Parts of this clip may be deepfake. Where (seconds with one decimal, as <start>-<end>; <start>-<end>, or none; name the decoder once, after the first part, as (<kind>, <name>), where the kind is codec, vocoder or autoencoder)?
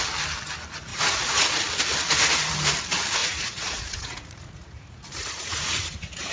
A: 0.9-1.6 (vocoder, Vocos); 3.2-6.3